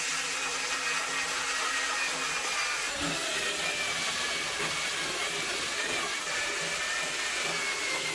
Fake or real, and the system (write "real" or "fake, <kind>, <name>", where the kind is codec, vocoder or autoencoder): real